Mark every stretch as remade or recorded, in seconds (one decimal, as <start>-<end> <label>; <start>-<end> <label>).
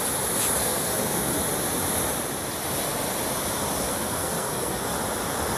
0.0-0.6 recorded; 0.6-1.4 remade; 1.4-3.9 recorded; 3.9-4.8 remade; 4.8-5.6 recorded